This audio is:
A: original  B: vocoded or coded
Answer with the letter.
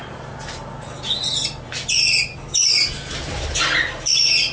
A